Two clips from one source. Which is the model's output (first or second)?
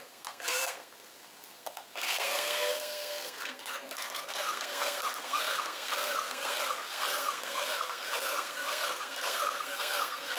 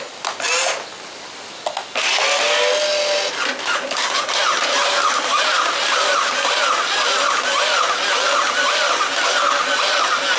first